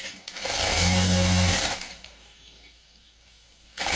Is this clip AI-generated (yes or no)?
yes